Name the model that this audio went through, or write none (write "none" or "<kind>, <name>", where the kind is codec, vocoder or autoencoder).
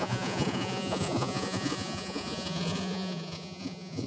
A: vocoder, Vocos